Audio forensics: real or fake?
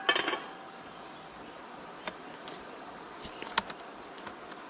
real